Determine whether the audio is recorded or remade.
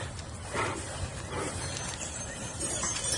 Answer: recorded